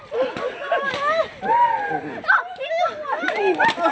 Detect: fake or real real